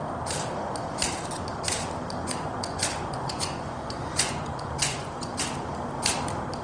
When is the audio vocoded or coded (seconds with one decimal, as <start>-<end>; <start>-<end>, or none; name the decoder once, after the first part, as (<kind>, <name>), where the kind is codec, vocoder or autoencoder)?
2.2-5.4 (vocoder, Vocos)